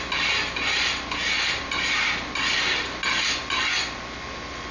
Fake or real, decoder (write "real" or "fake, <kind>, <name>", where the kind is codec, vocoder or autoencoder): real